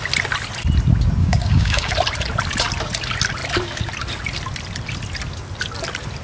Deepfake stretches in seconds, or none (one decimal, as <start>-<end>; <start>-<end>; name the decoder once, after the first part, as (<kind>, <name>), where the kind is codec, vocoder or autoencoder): 1.2-1.9 (codec, DAC)